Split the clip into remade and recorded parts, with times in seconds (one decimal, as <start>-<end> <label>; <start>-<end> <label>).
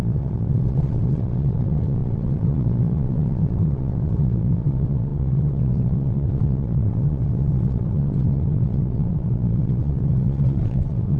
0.0-11.2 remade